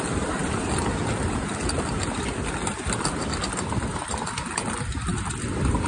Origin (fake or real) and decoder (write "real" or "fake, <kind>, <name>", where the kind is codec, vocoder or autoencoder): real